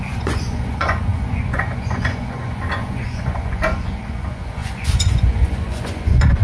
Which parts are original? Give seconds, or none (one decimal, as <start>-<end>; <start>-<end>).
none